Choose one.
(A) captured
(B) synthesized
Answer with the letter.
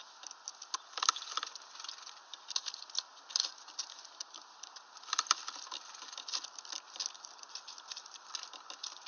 A